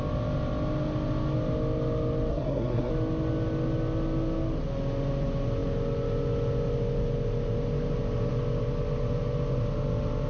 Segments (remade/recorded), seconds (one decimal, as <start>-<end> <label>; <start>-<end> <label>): 0.0-2.3 recorded; 2.3-2.9 remade; 2.9-10.3 recorded